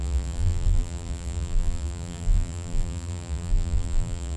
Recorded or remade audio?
remade